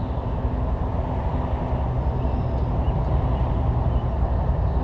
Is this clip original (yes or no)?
yes